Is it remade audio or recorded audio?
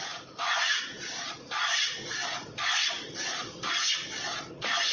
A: recorded